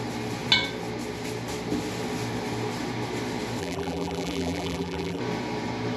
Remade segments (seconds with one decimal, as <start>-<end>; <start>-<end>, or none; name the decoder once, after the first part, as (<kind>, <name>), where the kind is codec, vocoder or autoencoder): 3.6-5.2 (vocoder, BigVGAN v2)